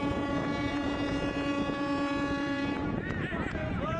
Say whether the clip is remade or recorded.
remade